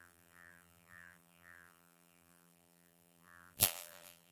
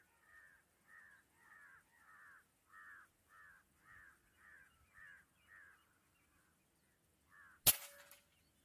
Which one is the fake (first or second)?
first